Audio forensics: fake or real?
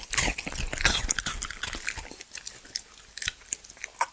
real